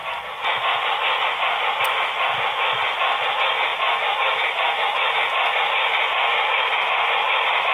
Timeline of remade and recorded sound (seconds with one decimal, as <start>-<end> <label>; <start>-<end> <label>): 0.0-7.7 recorded